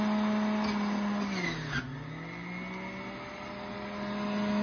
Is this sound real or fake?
real